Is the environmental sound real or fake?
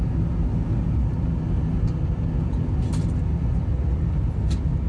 real